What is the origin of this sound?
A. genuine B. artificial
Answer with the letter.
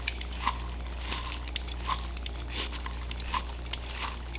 A